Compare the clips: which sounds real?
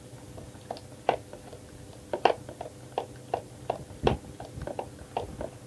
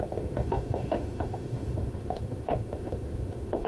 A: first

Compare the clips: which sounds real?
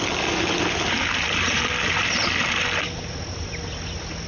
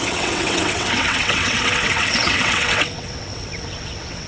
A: first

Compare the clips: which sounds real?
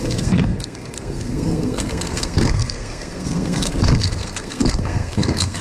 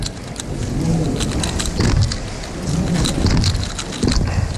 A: second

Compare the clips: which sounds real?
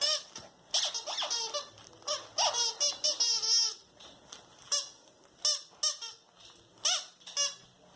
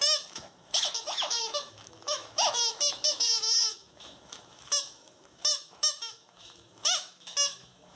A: first